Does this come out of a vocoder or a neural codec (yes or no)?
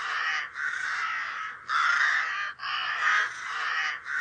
no